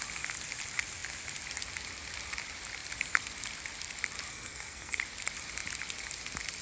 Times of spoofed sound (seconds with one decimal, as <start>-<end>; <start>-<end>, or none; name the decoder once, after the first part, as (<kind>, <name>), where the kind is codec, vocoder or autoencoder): 4.3-5.0 (codec, SNAC)

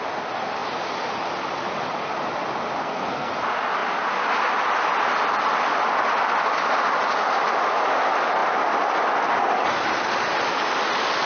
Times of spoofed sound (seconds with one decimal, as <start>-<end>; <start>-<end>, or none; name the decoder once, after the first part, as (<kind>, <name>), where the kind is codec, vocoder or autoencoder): 2.8-3.3 (codec, SNAC)